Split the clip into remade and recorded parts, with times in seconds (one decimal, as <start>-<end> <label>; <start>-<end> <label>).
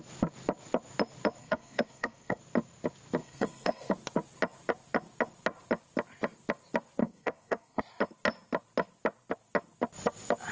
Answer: 0.0-1.4 recorded; 1.4-2.4 remade; 2.4-3.2 recorded; 3.2-3.9 remade; 3.9-7.0 recorded; 7.0-7.8 remade; 7.8-10.5 recorded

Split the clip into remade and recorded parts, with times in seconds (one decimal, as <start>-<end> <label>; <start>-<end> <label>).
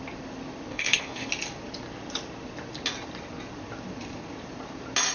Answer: 0.0-0.7 recorded; 0.7-1.3 remade; 1.3-5.1 recorded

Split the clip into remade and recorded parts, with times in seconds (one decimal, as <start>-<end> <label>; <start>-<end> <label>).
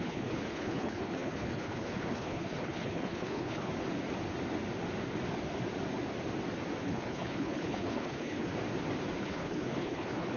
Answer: 0.0-3.7 remade; 3.7-6.8 recorded; 6.8-8.5 remade; 8.5-9.2 recorded; 9.2-10.4 remade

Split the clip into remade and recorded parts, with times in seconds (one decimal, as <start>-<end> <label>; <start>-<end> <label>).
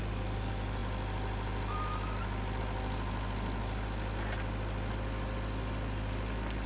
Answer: 0.0-6.7 recorded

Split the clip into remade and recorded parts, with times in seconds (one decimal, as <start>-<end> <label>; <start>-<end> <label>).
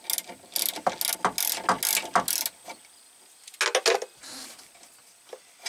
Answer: 0.0-5.7 recorded